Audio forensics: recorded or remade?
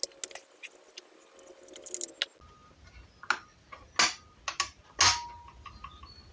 recorded